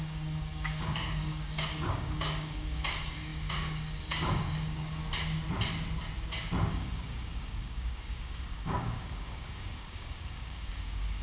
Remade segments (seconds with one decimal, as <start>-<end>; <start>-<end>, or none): 0.0-5.0; 6.7-11.2